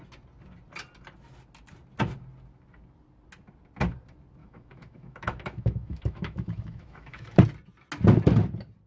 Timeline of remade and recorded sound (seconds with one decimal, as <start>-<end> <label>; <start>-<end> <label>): 0.0-4.4 recorded; 4.4-7.4 remade; 7.4-8.9 recorded